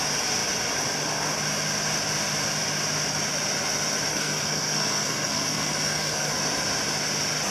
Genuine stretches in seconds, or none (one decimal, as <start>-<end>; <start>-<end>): 0.0-4.1; 6.3-7.5